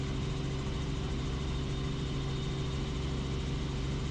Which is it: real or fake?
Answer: real